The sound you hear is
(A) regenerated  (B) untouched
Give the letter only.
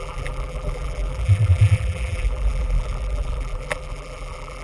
A